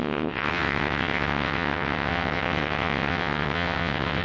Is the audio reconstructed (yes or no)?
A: yes